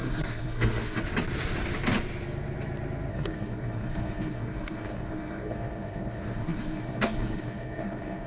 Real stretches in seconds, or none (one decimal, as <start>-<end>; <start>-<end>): 1.0-3.1